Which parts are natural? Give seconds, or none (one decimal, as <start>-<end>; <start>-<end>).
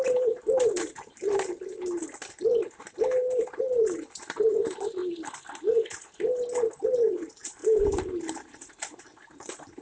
5.0-7.1